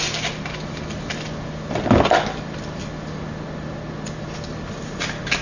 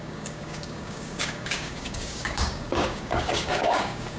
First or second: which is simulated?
second